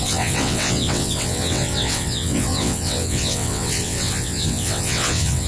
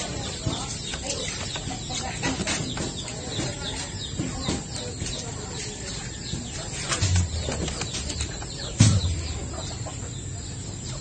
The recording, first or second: second